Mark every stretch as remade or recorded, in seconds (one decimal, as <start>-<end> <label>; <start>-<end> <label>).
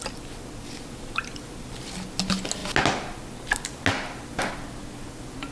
0.0-5.5 recorded